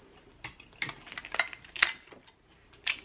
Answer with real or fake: real